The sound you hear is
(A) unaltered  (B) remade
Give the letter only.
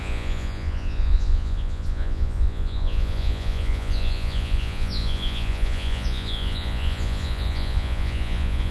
B